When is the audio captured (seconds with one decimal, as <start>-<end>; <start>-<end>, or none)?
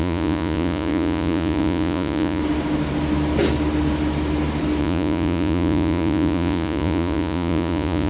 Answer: 2.4-4.8